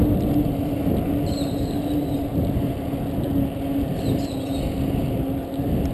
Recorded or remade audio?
recorded